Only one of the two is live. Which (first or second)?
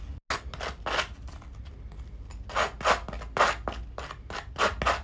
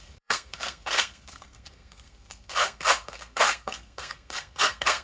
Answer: first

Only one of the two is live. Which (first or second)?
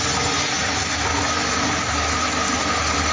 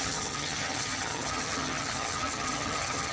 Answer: first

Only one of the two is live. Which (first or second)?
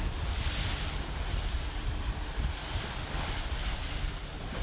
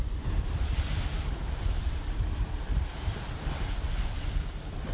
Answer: first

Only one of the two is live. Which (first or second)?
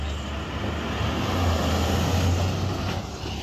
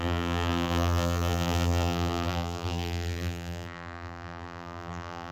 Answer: first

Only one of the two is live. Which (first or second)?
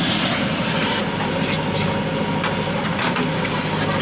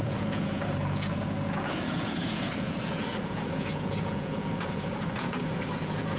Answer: first